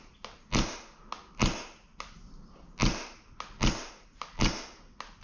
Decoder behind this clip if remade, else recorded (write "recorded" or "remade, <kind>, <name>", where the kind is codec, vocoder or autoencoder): recorded